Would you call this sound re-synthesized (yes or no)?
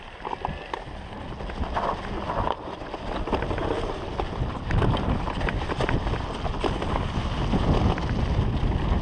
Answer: no